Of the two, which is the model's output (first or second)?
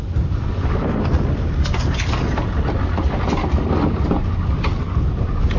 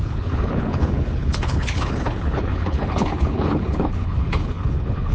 second